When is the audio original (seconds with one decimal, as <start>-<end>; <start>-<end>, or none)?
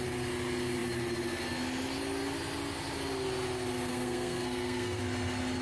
0.0-3.9; 5.0-5.6